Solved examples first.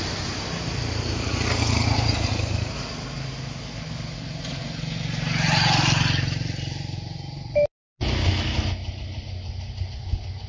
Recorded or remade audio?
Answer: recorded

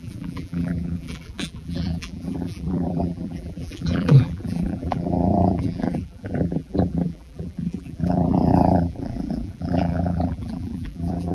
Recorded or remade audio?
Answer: remade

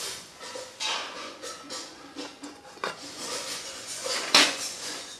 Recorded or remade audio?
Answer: remade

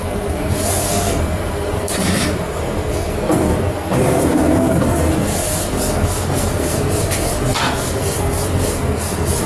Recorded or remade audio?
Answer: remade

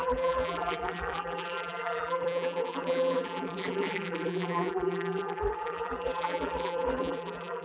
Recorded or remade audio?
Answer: remade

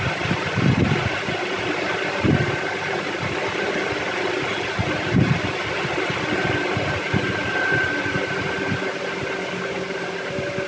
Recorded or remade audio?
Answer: recorded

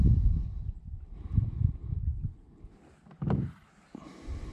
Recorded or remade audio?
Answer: recorded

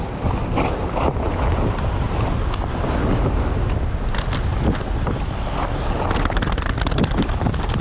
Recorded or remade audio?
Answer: recorded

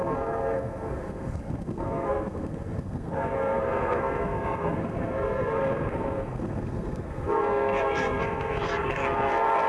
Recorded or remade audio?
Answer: remade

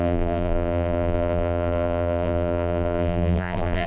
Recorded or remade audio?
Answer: remade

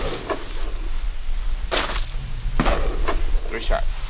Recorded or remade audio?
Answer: recorded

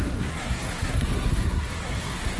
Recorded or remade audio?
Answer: remade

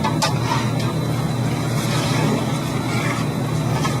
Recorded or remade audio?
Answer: recorded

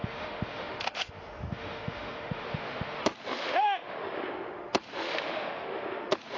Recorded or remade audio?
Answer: remade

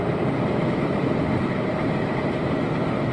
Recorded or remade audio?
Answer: recorded